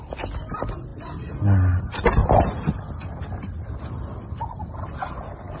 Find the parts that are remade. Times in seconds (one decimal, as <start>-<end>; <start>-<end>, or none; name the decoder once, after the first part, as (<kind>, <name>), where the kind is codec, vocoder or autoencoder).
2.2-5.1 (vocoder, BigVGAN v2)